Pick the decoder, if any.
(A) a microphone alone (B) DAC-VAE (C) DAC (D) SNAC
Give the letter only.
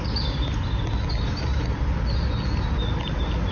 A